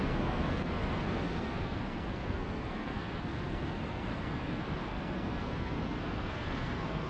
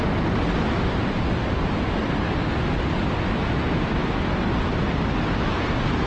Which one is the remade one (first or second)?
first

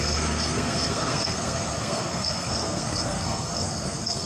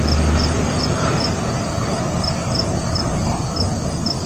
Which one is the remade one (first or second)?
first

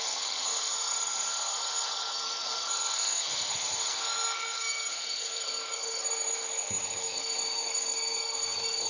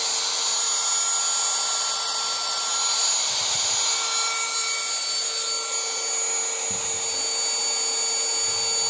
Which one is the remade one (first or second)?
first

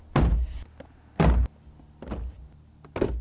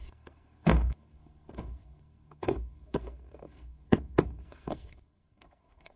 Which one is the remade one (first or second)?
second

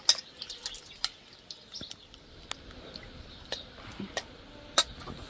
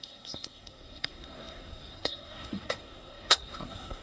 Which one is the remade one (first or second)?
second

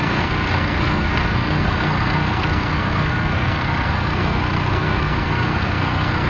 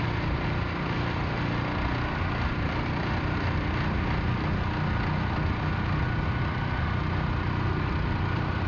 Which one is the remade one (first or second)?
first